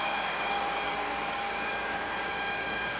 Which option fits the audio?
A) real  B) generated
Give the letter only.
B